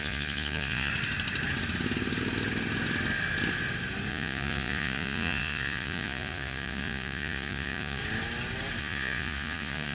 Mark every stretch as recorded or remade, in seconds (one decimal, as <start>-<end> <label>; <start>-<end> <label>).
0.0-0.9 remade; 0.9-4.1 recorded; 4.1-8.0 remade; 8.0-8.8 recorded; 8.8-9.9 remade